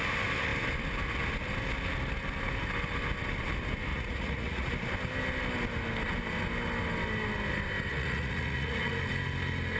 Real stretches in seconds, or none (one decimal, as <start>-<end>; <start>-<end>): 0.0-3.9; 4.7-7.9; 8.9-9.8